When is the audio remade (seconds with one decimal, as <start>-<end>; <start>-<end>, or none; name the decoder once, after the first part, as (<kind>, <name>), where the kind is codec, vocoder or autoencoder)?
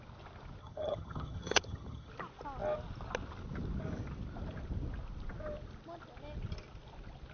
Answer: 0.6-2.1 (vocoder, HiFi-GAN)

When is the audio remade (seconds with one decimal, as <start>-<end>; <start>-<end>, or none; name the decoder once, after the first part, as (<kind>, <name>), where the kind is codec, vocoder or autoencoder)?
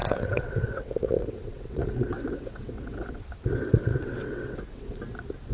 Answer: 0.0-3.2 (vocoder, WaveNeXt); 3.7-5.0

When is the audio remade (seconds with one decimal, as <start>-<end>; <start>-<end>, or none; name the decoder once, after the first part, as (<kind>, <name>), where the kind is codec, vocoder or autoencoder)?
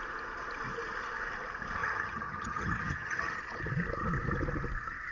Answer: 1.8-3.4 (vocoder, HiFi-GAN)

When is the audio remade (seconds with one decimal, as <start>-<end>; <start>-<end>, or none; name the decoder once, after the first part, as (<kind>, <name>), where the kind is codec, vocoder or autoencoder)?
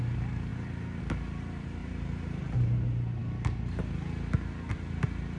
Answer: 1.8-2.4 (vocoder, BigVGAN v2)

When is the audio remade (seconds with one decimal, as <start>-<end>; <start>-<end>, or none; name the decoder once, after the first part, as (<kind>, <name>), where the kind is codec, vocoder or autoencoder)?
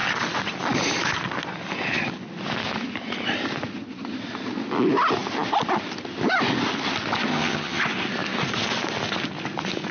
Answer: 7.3-7.8 (vocoder, HiFi-GAN)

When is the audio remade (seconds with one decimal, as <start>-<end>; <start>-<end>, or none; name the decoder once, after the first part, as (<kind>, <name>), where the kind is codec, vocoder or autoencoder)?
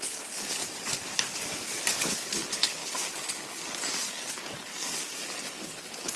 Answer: 0.0-0.6 (codec, HILCodec); 1.9-2.8; 4.3-4.7; 5.5-6.2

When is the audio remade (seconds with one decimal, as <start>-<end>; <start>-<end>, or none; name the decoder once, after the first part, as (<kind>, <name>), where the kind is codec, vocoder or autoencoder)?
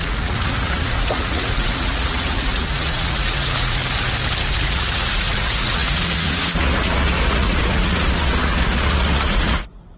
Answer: 0.0-3.8 (vocoder, Vocos); 4.5-10.0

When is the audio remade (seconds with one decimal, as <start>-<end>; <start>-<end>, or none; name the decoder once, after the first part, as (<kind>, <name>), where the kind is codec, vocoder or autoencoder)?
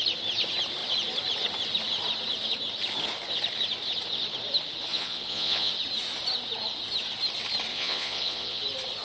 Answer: 4.9-5.7 (vocoder, Vocos); 7.7-8.6